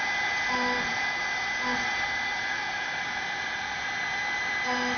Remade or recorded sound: recorded